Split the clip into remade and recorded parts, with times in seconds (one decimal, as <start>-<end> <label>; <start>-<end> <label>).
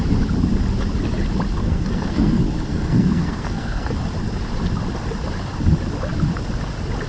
0.0-1.6 recorded; 1.6-3.9 remade; 3.9-7.1 recorded